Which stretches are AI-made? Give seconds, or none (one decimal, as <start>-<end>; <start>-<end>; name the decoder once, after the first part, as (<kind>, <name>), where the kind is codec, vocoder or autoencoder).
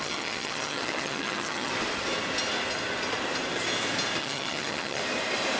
0.0-1.7 (vocoder, HiFi-GAN); 4.2-5.0